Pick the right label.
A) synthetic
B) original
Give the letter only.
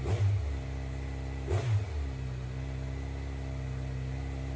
B